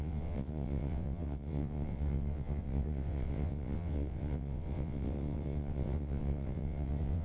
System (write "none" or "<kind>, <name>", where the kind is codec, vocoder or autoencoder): vocoder, WaveNeXt